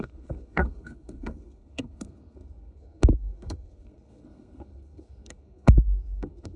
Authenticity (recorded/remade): remade